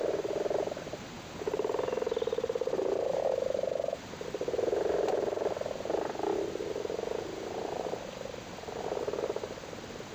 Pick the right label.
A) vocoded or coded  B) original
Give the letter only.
B